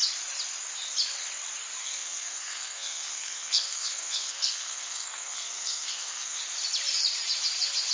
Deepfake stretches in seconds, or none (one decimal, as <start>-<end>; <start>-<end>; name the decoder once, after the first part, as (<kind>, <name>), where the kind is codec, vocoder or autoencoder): 1.8-6.4 (codec, SNAC)